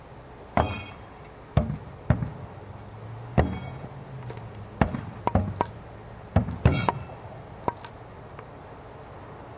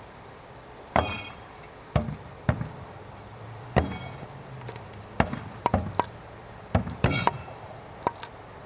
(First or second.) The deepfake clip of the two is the second